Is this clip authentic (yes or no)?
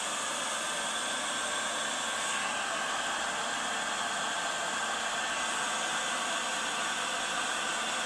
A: yes